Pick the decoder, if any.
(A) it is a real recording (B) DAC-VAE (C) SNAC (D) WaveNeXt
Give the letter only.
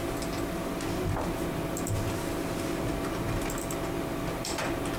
A